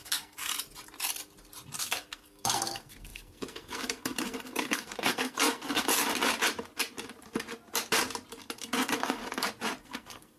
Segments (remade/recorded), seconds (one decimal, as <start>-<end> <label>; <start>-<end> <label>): 0.0-0.5 remade; 0.5-1.8 recorded; 1.8-5.9 remade; 5.9-8.6 recorded; 8.6-9.2 remade; 9.2-9.8 recorded; 9.8-10.4 remade